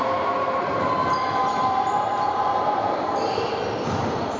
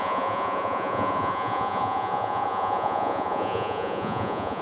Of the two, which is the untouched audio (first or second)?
first